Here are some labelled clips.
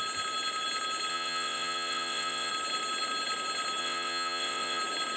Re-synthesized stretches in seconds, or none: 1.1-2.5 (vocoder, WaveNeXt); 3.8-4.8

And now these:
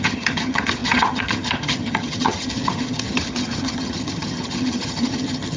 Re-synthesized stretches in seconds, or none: 0.0-5.6 (vocoder, HiFi-GAN)

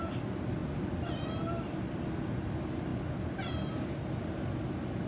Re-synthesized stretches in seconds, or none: none

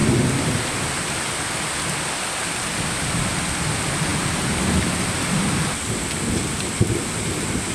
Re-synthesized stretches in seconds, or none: none